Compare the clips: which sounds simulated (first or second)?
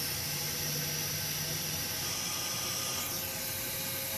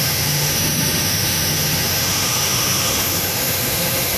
second